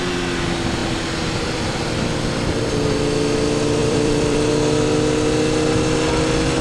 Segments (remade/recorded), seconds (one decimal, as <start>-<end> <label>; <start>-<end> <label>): 0.0-3.8 recorded; 3.8-4.5 remade; 4.5-6.6 recorded